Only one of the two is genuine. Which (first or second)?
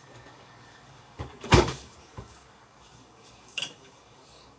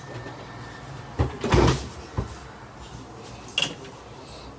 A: second